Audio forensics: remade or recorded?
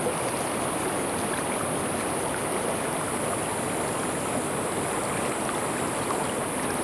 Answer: recorded